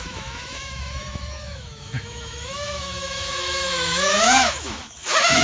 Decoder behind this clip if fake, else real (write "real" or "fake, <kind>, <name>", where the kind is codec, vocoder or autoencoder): fake, autoencoder, DAC-VAE